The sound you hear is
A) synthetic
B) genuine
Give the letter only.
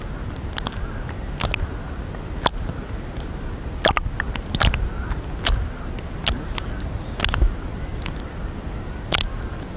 B